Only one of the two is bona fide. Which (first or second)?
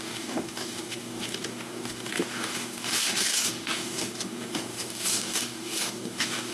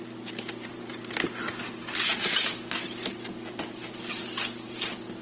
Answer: second